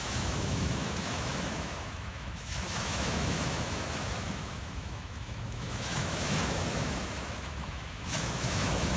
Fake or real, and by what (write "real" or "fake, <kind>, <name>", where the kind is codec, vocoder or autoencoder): fake, autoencoder, DAC-VAE